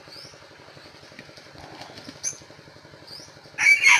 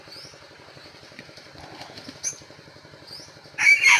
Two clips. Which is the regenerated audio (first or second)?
second